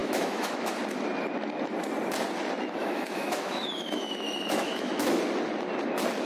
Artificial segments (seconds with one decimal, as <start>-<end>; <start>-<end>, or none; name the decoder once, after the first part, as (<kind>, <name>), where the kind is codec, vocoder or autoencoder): 0.0-0.8 (autoencoder, DAC-VAE); 2.8-5.2